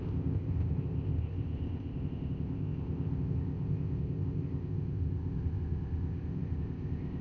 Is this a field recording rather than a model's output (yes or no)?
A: no